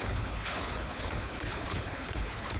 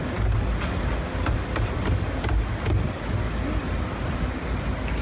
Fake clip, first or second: first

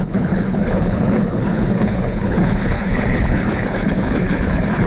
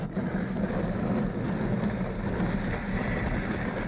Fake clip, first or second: first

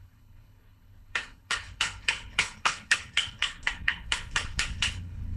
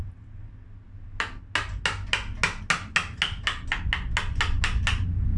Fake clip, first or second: first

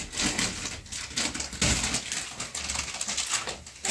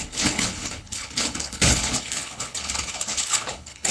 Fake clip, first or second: second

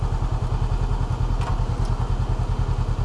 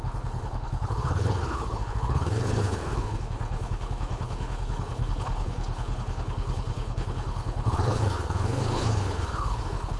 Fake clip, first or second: second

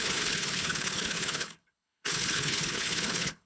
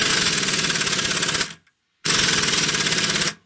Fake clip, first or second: first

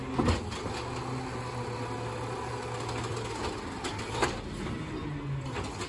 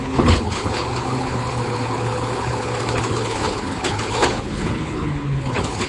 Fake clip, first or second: second